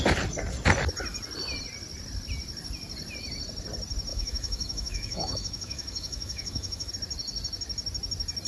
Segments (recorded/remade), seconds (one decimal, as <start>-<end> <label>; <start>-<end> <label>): 0.0-4.1 recorded; 4.1-6.9 remade; 6.9-8.5 recorded